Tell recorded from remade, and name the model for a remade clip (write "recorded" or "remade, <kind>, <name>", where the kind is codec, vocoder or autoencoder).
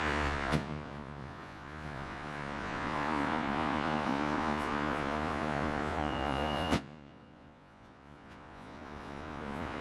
remade, vocoder, Vocos